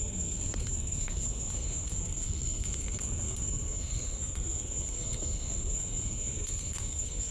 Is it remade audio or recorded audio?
remade